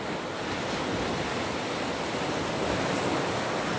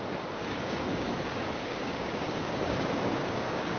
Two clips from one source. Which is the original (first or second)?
first